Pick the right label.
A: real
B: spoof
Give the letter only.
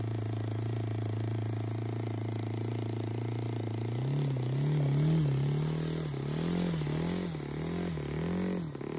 A